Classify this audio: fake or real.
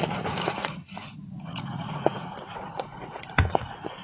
fake